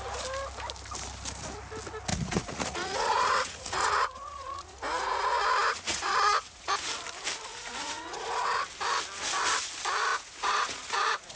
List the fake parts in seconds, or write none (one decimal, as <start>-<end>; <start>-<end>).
2.1-6.7; 7.5-8.6; 10.1-11.4